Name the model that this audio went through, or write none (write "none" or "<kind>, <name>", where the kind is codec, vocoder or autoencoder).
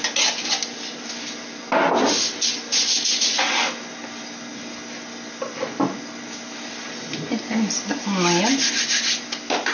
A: none